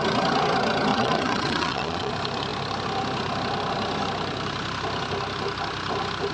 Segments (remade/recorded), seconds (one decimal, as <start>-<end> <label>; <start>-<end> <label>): 0.0-0.9 recorded; 0.9-2.1 remade; 2.1-6.3 recorded